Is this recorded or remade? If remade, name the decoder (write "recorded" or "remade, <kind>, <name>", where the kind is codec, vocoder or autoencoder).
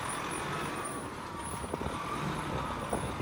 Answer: recorded